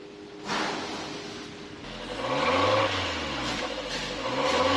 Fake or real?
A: real